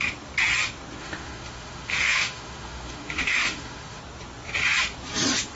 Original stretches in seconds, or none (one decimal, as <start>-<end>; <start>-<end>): 0.0-1.0; 4.0-5.6